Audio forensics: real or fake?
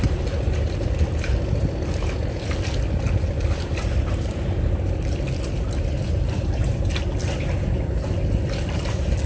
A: real